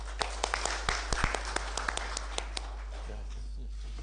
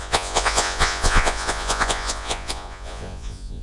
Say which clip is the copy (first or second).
second